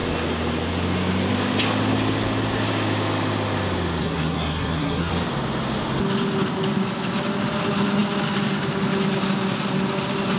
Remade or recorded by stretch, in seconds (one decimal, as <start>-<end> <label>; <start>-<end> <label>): 0.0-4.0 recorded; 4.0-5.1 remade; 5.1-10.4 recorded

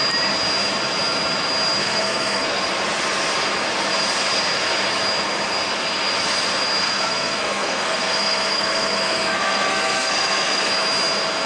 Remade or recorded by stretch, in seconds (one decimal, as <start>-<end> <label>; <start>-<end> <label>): 0.0-1.8 recorded; 1.8-2.6 remade; 2.6-6.8 recorded; 6.8-10.7 remade; 10.7-11.5 recorded

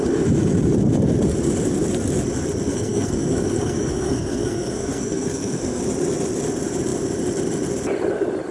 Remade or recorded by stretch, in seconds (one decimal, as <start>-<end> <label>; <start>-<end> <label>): 0.0-2.7 recorded; 2.7-5.8 remade; 5.8-8.5 recorded

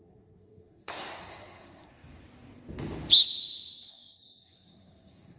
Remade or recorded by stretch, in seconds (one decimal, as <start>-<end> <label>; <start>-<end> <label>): 0.0-1.9 remade; 1.9-3.9 recorded; 3.9-5.4 remade